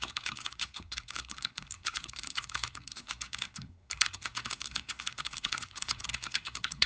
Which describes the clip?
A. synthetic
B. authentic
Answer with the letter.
A